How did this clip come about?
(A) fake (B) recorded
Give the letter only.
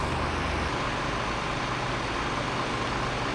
B